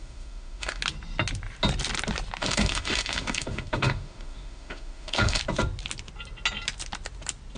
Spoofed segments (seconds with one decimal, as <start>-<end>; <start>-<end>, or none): 0.0-0.8; 2.4-5.4